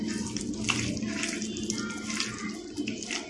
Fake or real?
real